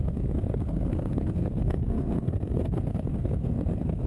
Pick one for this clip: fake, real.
fake